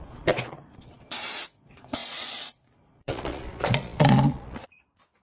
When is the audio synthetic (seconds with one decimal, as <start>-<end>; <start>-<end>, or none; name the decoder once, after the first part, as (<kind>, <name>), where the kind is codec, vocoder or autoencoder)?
0.0-5.2 (vocoder, Vocos)